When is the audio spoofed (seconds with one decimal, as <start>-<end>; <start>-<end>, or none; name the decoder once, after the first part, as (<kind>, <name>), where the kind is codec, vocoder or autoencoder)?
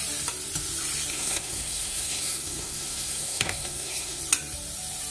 1.1-4.2 (codec, SNAC)